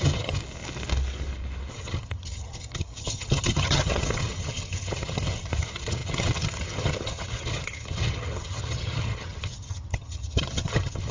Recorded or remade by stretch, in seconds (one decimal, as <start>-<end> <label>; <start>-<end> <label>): 0.0-0.4 remade; 0.4-1.7 recorded; 1.7-11.1 remade